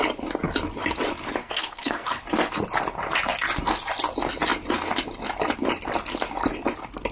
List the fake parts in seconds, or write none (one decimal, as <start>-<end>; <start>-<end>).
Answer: 1.4-2.2